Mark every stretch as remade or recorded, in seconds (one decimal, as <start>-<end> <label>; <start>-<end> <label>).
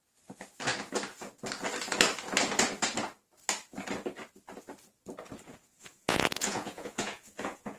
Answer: 0.0-5.7 recorded; 5.7-7.8 remade